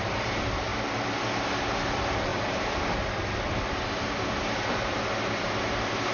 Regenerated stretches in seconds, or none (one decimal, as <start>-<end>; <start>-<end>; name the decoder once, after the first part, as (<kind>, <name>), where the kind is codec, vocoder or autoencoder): none